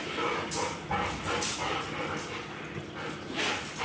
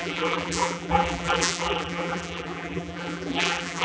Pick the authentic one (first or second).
first